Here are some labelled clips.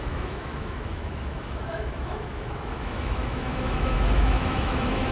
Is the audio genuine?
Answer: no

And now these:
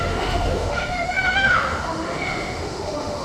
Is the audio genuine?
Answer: no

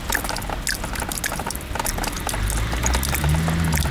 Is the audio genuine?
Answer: yes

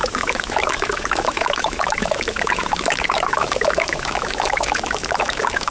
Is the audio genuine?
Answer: no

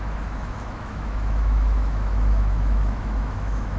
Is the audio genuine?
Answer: no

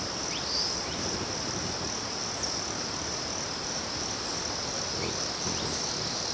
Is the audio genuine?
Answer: yes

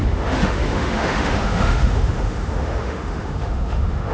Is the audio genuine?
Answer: no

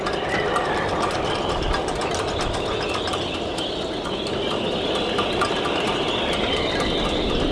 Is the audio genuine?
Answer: yes